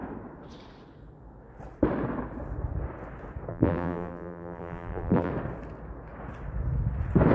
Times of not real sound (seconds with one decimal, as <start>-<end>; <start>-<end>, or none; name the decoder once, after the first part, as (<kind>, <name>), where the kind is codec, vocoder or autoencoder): 3.5-5.3 (vocoder, BigVGAN v2)